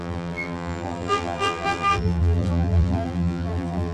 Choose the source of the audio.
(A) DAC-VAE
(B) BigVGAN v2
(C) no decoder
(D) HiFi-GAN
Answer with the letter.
B